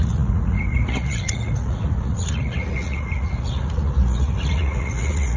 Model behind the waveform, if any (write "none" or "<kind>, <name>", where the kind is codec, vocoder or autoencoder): vocoder, Vocos